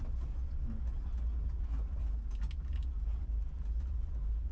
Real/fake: real